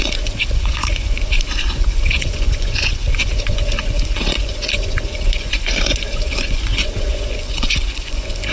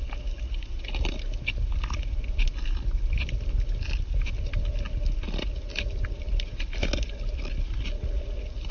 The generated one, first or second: first